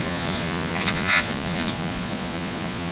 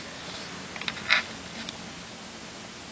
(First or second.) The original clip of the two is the second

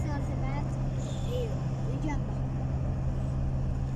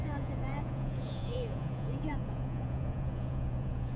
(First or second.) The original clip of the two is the first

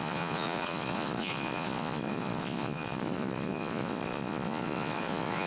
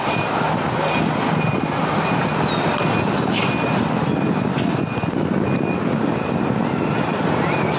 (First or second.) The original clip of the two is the second